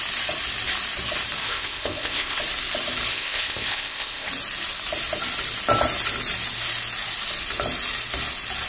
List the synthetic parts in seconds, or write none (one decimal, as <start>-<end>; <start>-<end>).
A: 1.4-2.4; 3.1-4.3